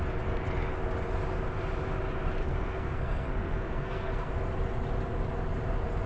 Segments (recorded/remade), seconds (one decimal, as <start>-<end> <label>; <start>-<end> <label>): 0.0-2.4 recorded; 2.4-4.3 remade; 4.3-6.1 recorded